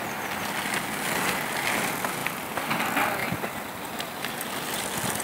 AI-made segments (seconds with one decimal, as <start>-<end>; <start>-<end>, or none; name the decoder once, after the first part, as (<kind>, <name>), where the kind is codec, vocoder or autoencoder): none